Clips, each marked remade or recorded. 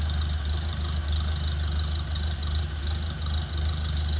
recorded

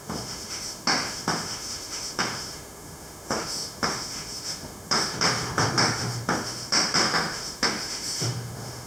remade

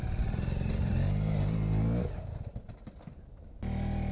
recorded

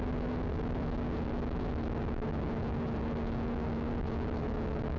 remade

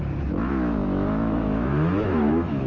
remade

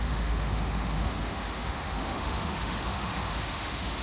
remade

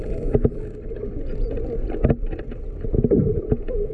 recorded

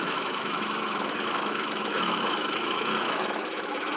remade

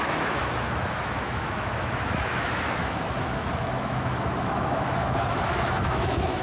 remade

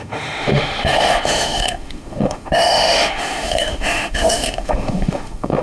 remade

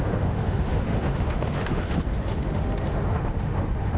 remade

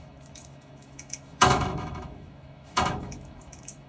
remade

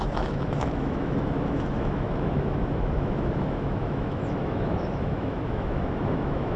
remade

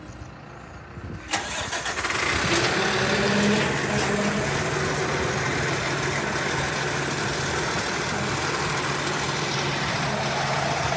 recorded